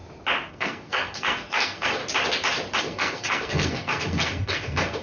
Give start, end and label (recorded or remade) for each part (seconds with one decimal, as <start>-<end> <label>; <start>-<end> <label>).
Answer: 0.0-0.5 recorded; 0.5-2.0 remade; 2.0-2.8 recorded; 2.8-5.0 remade